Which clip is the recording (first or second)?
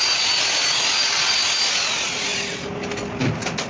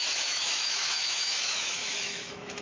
first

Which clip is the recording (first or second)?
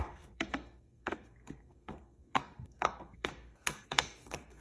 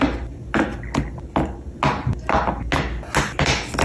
second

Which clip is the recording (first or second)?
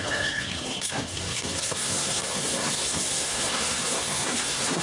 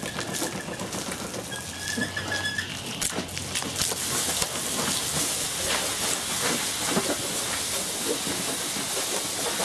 second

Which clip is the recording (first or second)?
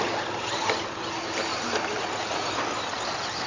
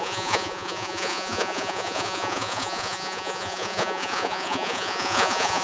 first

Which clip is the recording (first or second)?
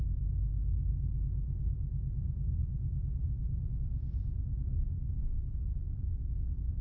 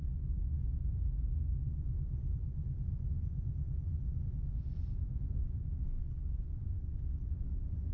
first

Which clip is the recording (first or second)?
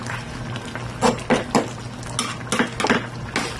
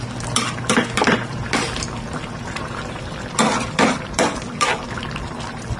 first